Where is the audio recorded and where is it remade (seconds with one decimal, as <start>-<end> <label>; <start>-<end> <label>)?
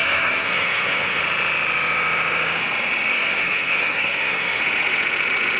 0.0-1.2 remade; 1.2-3.1 recorded; 3.1-4.6 remade; 4.6-5.6 recorded